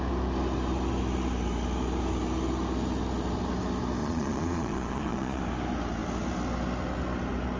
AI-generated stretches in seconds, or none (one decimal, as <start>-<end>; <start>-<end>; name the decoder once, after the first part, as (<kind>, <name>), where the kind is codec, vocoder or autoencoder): 4.0-5.4 (vocoder, Vocos)